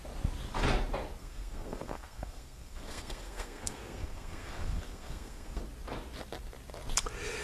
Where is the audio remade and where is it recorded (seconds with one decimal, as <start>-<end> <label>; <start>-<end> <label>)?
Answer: 0.0-1.2 recorded; 1.2-5.6 remade; 5.6-7.4 recorded